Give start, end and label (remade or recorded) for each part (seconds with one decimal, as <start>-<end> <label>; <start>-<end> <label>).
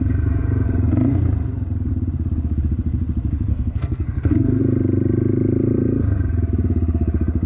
0.0-3.5 recorded; 3.5-4.6 remade; 4.6-7.5 recorded